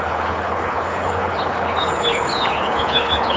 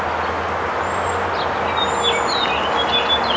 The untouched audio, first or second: second